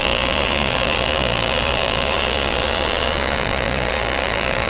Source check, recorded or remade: remade